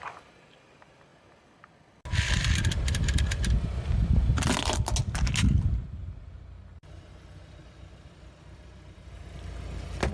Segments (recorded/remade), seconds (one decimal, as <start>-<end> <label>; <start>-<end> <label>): 0.0-10.1 recorded